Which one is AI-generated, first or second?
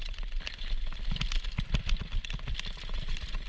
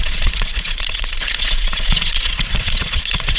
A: second